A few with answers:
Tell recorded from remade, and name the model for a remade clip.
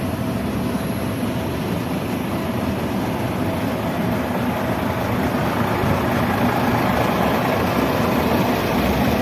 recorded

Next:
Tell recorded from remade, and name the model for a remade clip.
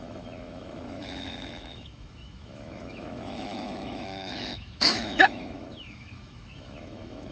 remade, autoencoder, DAC-VAE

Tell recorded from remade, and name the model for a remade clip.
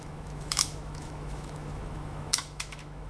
remade, autoencoder, DAC-VAE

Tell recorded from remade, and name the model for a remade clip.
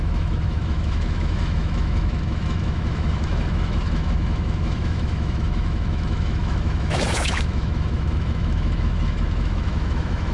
remade, autoencoder, DAC-VAE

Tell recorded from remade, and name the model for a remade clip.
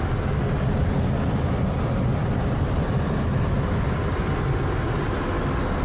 recorded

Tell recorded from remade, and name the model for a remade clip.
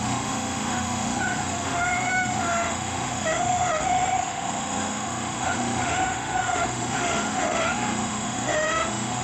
remade, autoencoder, DAC-VAE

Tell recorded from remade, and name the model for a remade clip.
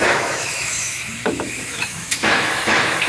remade, autoencoder, DAC-VAE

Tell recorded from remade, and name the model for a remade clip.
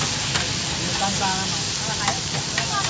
recorded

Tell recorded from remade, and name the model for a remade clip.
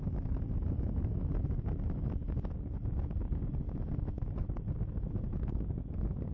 recorded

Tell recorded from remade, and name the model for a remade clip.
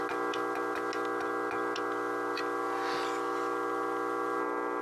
recorded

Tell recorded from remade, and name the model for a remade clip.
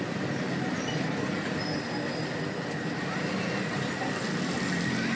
recorded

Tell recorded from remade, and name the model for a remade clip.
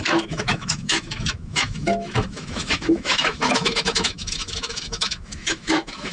remade, autoencoder, DAC-VAE